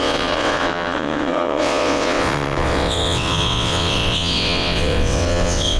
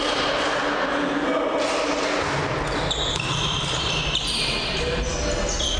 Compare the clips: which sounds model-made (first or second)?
first